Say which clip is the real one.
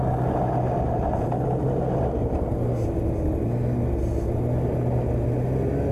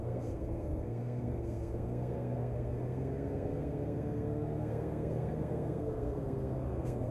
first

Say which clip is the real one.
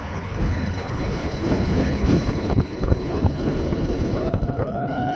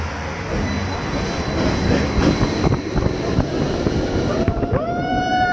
second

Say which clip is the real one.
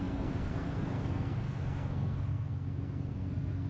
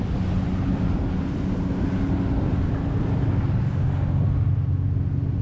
second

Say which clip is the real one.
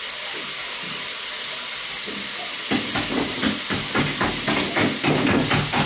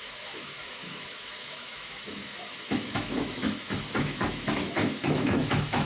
first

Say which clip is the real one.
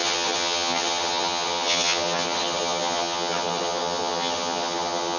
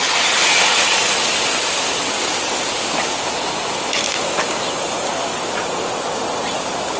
second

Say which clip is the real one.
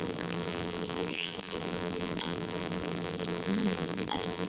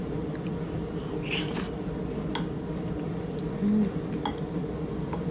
second